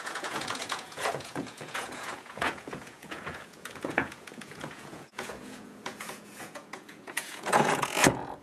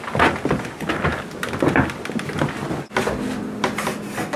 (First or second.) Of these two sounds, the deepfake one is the first